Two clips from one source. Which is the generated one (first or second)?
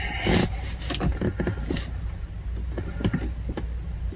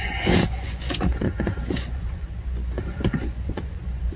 second